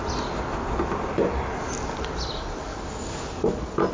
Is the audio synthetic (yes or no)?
no